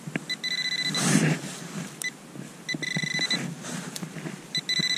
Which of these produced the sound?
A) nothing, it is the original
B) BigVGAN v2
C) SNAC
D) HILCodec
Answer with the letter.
A